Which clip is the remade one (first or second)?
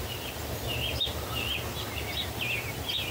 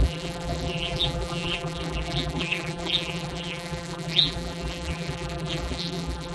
second